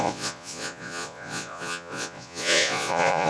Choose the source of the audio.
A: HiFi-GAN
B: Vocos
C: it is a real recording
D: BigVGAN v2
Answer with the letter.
B